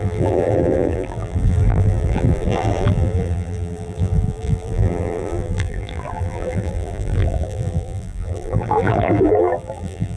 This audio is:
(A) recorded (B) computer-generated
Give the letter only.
B